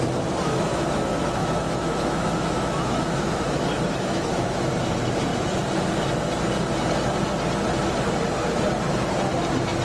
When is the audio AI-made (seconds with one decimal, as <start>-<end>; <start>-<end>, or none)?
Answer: 1.4-4.7